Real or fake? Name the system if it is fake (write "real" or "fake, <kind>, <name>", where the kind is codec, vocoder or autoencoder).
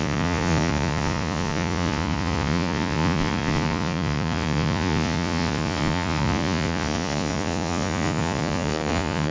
fake, vocoder, Vocos